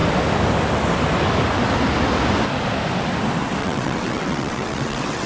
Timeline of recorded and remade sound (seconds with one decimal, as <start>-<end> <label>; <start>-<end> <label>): 0.0-3.6 recorded; 3.6-5.3 remade